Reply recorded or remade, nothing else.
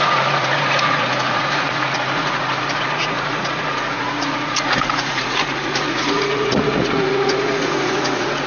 remade